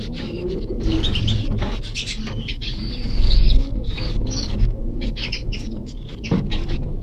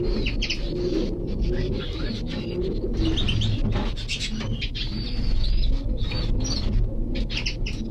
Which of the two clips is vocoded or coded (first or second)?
first